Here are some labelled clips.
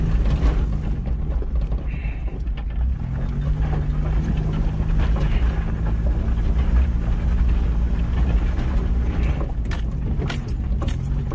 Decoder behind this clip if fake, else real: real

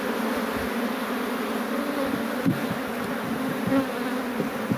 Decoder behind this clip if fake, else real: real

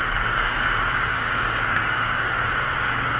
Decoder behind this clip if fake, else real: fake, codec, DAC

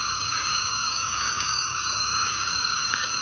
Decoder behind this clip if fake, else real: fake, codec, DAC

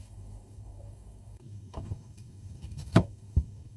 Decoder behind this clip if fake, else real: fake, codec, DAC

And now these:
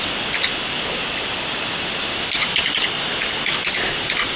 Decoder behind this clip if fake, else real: real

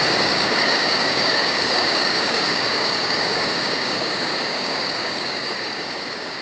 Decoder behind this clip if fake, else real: fake, codec, DAC